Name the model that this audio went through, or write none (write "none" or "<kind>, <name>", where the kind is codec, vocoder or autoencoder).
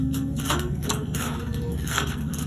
codec, SNAC